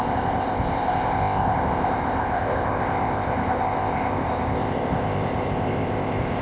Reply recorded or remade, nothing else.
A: remade